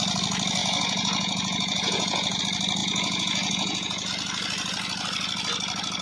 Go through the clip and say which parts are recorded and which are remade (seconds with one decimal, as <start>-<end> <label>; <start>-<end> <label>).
0.0-0.6 recorded; 0.6-2.4 remade; 2.4-2.8 recorded; 2.8-4.1 remade; 4.1-6.0 recorded